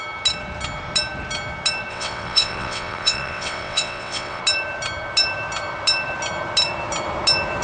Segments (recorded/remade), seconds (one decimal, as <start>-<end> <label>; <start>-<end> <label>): 0.0-1.9 recorded; 1.9-4.4 remade; 4.4-7.6 recorded

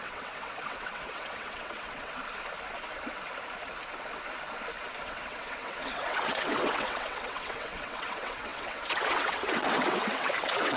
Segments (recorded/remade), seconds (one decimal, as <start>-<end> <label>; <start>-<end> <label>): 0.0-2.2 remade; 2.2-5.0 recorded; 5.0-10.8 remade